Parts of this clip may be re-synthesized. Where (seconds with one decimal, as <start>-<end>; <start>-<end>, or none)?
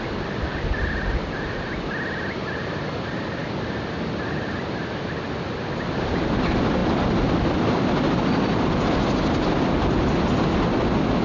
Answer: none